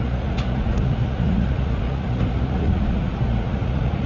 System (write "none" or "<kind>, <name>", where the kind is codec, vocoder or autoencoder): vocoder, Vocos